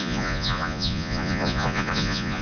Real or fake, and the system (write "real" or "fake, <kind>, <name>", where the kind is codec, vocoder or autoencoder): fake, vocoder, Vocos